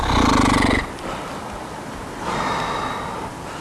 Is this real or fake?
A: real